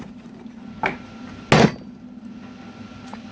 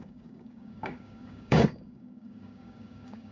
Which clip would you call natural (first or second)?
first